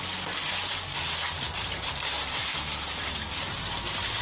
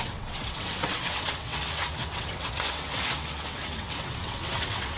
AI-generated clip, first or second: second